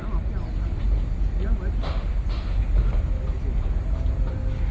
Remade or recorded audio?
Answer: recorded